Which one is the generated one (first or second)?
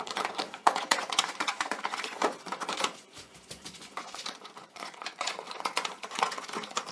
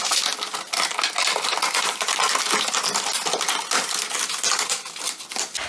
first